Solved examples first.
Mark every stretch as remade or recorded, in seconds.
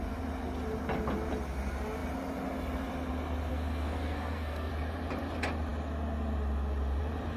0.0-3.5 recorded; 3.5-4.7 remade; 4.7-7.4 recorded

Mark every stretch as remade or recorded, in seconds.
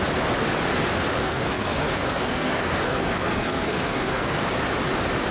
0.0-1.2 recorded; 1.2-4.4 remade; 4.4-5.3 recorded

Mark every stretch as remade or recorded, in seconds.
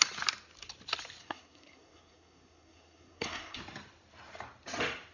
0.0-1.2 recorded; 1.2-3.6 remade; 3.6-5.1 recorded